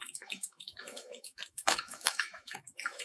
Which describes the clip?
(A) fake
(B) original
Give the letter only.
A